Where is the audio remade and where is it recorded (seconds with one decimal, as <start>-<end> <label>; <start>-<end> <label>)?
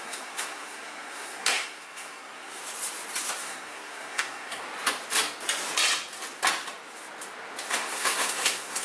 0.0-2.6 remade; 2.6-3.4 recorded; 3.4-4.6 remade; 4.6-7.7 recorded; 7.7-8.8 remade